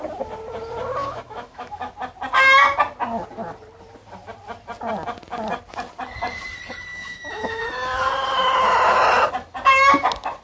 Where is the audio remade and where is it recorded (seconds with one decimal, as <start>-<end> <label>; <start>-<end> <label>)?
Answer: 0.0-1.0 recorded; 1.0-1.9 remade; 1.9-6.9 recorded; 6.9-7.6 remade; 7.6-10.4 recorded